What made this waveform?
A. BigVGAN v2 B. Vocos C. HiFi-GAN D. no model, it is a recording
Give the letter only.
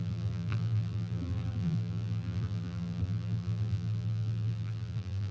A